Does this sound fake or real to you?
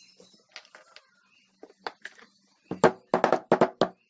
real